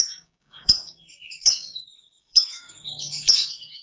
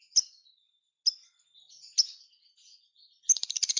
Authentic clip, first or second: second